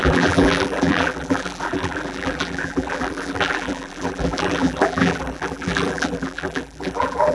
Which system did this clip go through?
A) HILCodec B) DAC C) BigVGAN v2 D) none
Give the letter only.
C